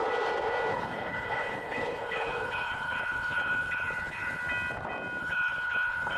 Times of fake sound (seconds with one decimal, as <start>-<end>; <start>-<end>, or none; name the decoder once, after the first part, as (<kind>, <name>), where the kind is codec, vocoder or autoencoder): 0.7-4.4 (codec, HILCodec); 5.2-6.2